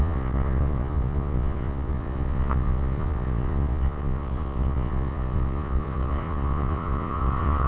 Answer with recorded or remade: remade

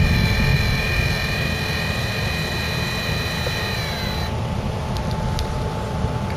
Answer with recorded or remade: recorded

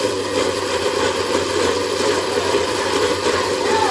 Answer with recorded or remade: remade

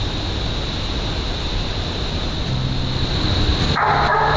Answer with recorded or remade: recorded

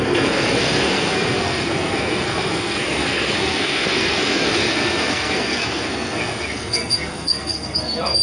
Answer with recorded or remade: remade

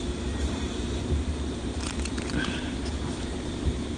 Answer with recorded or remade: remade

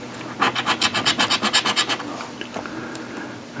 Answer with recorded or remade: recorded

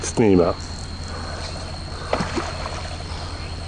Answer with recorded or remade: recorded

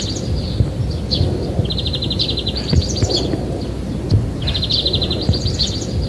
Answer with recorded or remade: recorded